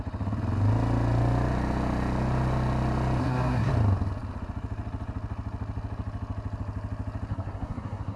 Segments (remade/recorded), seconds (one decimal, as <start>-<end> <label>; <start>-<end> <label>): 0.0-3.2 recorded; 3.2-3.7 remade; 3.7-7.3 recorded; 7.3-8.2 remade